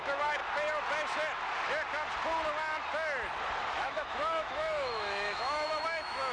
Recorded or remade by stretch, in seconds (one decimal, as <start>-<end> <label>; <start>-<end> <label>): 0.0-0.4 remade; 0.4-3.7 recorded; 3.7-6.3 remade